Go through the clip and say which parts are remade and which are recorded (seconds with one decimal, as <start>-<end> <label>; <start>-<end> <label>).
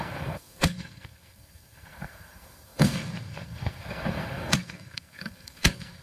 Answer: 0.0-6.0 remade